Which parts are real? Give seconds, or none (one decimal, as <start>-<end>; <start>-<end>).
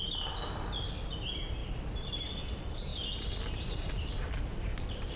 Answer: 0.0-5.2